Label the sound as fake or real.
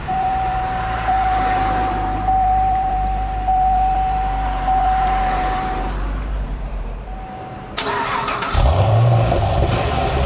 fake